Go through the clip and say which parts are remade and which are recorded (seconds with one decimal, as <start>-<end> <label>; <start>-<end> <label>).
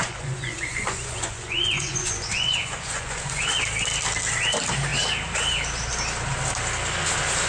0.0-3.5 remade; 3.5-7.5 recorded